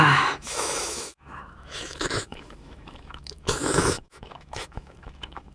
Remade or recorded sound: remade